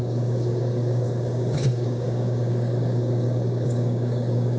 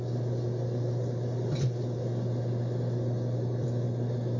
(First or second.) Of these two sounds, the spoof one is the first